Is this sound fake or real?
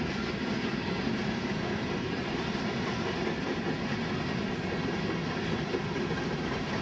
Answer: real